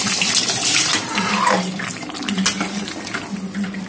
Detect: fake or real real